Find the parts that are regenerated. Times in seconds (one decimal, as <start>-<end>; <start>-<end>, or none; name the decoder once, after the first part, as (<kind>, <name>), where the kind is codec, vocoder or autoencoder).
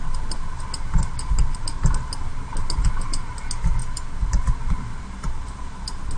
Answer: none